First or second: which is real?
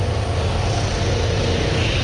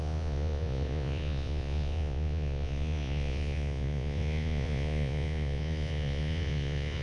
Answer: first